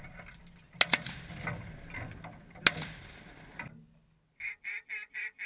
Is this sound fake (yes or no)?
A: no